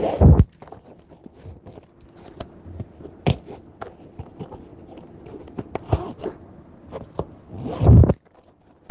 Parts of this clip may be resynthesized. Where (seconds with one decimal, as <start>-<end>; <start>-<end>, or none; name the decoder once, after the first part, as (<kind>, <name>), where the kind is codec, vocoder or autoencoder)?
none